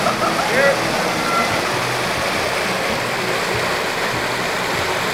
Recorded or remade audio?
recorded